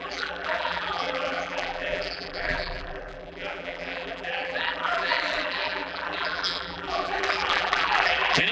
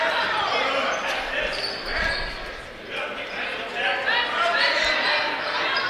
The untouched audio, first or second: second